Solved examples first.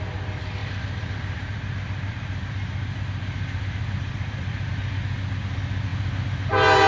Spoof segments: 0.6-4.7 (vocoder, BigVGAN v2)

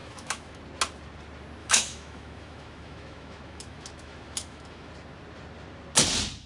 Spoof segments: 0.0-0.6 (autoencoder, DAC-VAE); 1.6-4.9